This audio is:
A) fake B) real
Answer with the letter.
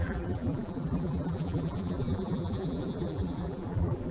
A